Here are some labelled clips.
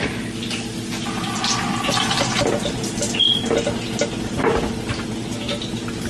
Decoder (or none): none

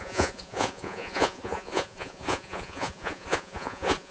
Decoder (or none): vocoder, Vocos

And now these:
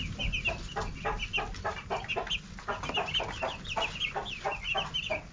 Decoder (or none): none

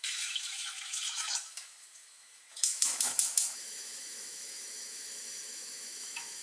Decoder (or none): autoencoder, DAC-VAE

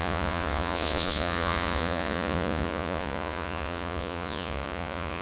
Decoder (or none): vocoder, Vocos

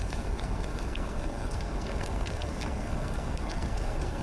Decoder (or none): codec, SNAC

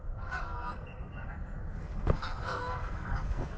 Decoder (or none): codec, SNAC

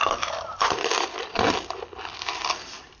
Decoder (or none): vocoder, BigVGAN v2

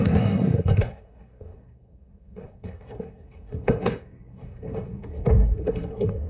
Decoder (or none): codec, SNAC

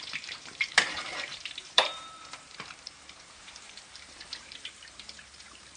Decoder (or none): vocoder, BigVGAN v2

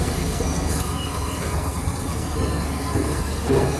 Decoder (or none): codec, SNAC